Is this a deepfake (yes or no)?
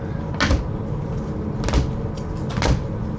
no